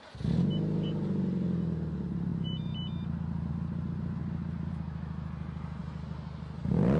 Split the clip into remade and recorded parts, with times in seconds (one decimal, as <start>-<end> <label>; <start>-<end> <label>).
0.0-7.0 recorded